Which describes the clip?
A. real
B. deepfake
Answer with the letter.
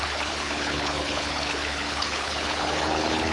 B